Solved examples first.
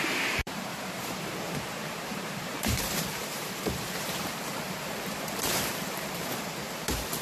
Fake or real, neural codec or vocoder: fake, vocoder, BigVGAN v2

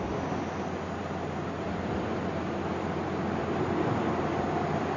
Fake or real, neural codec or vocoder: real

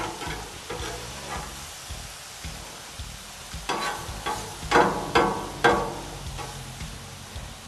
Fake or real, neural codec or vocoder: real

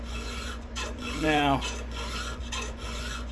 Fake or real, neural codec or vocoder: fake, vocoder, Vocos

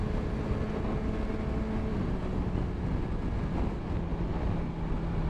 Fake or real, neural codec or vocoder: real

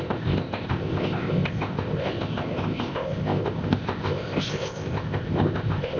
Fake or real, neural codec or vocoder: fake, codec, ZipCodec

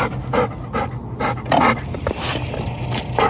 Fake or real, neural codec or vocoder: real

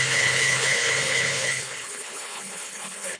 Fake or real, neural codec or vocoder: fake, codec, HILCodec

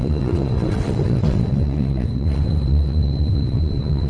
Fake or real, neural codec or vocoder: fake, vocoder, WaveNeXt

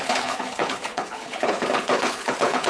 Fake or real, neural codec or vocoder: fake, codec, HILCodec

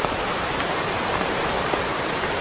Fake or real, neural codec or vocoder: real